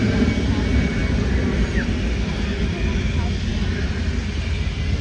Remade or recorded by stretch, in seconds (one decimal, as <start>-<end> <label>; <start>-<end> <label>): 0.0-5.0 recorded